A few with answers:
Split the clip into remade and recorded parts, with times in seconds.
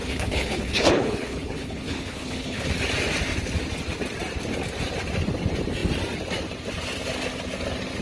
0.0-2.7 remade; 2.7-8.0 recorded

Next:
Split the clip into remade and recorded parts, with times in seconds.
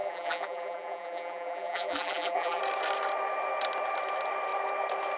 0.0-2.6 remade; 2.6-5.2 recorded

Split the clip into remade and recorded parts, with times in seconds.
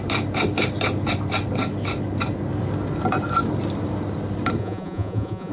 0.0-4.6 recorded; 4.6-5.5 remade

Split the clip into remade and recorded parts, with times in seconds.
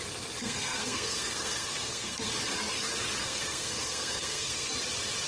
0.0-0.4 recorded; 0.4-2.3 remade; 2.3-3.2 recorded; 3.2-4.7 remade; 4.7-5.3 recorded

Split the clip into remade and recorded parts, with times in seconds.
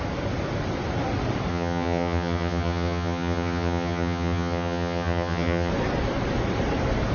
0.0-1.5 recorded; 1.5-5.7 remade; 5.7-7.1 recorded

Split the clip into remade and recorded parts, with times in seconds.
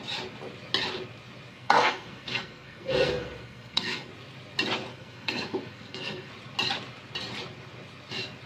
0.0-1.5 recorded; 1.5-4.1 remade; 4.1-4.9 recorded; 4.9-6.3 remade; 6.3-8.5 recorded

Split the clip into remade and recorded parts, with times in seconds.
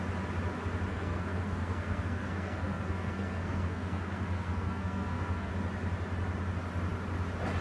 0.0-0.9 recorded; 0.9-5.5 remade; 5.5-7.6 recorded